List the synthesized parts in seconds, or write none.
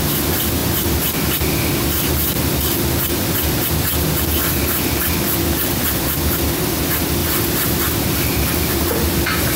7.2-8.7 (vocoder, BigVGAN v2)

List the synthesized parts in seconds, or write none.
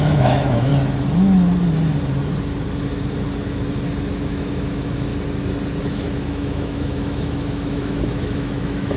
0.0-0.7 (autoencoder, DAC-VAE); 4.1-5.1; 5.8-9.0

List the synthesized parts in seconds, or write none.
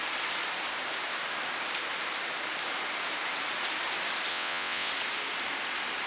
4.3-4.9 (vocoder, WaveNeXt)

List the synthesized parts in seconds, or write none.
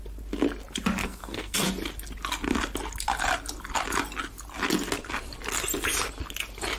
1.0-1.7 (codec, SNAC)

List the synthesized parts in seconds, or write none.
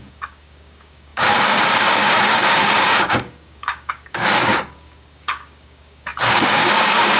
0.0-7.2 (codec, DAC)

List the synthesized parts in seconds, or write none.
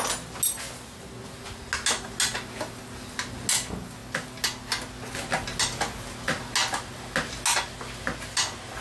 none